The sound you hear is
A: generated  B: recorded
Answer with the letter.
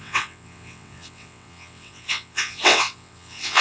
A